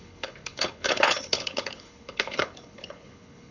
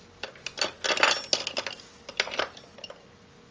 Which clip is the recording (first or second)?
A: second